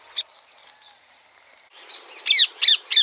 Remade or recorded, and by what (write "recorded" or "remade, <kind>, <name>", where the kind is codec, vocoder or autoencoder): recorded